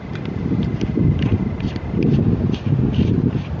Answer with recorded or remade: recorded